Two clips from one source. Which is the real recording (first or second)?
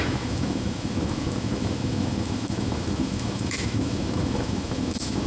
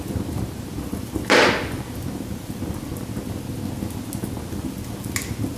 second